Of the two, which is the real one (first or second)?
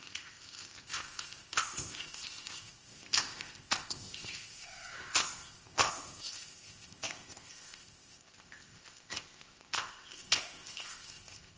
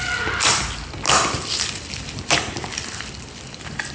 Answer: second